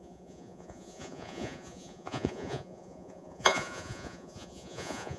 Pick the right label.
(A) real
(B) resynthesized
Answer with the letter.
B